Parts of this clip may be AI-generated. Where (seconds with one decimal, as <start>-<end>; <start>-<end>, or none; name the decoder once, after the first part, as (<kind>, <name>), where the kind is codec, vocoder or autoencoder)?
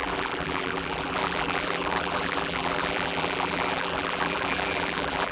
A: 0.0-5.3 (vocoder, BigVGAN v2)